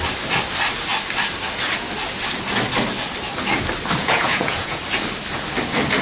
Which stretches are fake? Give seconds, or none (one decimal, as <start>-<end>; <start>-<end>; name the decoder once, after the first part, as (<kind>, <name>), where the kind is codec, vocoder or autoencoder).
4.0-4.8 (vocoder, Vocos)

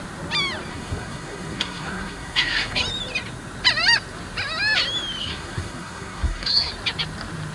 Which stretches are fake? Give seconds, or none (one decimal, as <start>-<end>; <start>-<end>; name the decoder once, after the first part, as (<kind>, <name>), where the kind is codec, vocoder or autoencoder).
0.7-2.8 (codec, SNAC); 5.2-6.7